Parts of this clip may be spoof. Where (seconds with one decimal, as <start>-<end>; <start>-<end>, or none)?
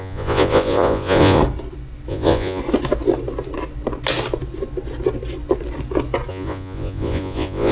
0.0-1.4; 2.1-2.6; 6.3-7.7